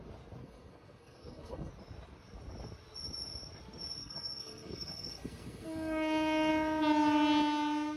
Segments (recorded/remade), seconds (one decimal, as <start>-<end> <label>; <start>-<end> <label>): 0.0-0.4 recorded; 0.4-1.7 remade; 1.7-4.0 recorded; 4.0-6.5 remade; 6.5-8.0 recorded